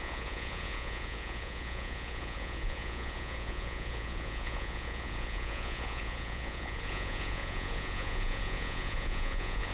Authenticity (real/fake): fake